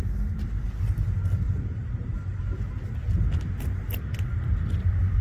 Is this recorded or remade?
recorded